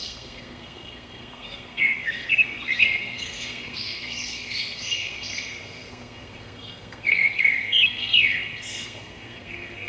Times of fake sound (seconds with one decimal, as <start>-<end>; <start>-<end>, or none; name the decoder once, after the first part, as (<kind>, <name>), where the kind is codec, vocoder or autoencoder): 0.0-9.9 (codec, SNAC)